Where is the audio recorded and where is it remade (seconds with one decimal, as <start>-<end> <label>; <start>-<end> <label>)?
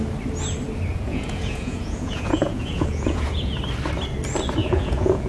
0.0-0.9 recorded; 0.9-3.6 remade; 3.6-4.6 recorded; 4.6-5.3 remade